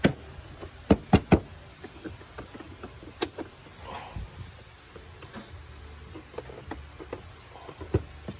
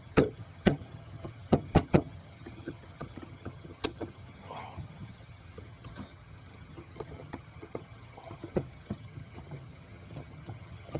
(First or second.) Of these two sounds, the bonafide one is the first